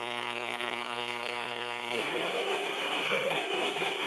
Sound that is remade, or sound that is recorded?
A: remade